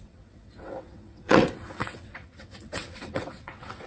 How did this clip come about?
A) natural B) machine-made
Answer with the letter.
B